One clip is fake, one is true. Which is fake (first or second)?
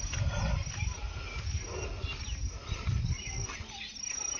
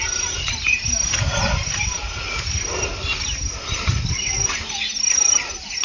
second